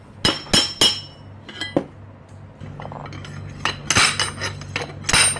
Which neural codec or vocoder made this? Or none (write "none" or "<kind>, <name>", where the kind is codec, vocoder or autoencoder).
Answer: none